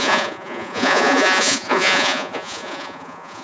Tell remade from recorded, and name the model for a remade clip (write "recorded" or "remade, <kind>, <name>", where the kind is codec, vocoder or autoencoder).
remade, vocoder, Vocos